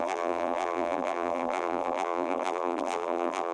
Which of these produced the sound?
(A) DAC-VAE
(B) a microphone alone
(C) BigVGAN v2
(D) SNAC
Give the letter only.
C